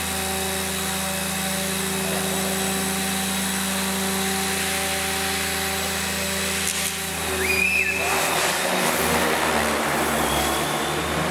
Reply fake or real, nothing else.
real